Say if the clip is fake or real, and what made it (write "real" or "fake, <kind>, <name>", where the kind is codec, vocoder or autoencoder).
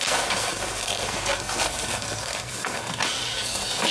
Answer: fake, codec, SNAC